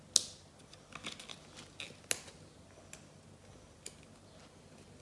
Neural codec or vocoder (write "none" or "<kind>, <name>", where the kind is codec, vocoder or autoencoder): none